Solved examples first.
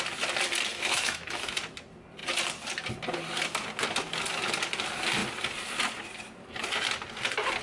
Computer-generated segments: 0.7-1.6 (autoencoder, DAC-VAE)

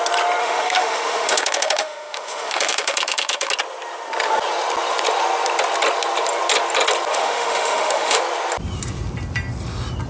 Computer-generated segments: 0.4-3.5 (autoencoder, DAC-VAE); 7.1-8.2